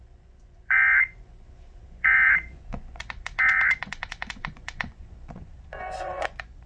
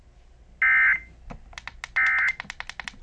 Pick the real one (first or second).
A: second